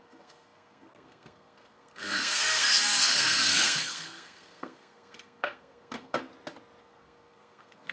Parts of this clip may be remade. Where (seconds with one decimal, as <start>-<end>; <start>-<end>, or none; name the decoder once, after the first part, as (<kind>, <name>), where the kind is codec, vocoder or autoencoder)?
0.0-6.3 (codec, SNAC); 6.8-7.9